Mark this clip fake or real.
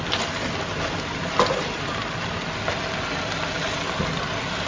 real